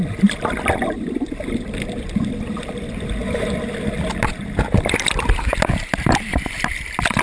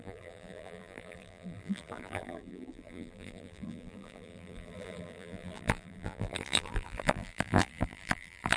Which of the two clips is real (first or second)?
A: first